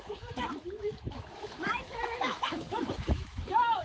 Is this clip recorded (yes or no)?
no